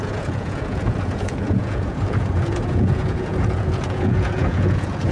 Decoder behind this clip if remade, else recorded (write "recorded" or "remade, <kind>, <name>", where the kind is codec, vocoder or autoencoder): remade, vocoder, Vocos